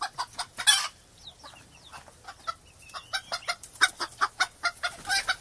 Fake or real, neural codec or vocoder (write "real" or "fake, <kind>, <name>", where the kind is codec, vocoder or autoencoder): real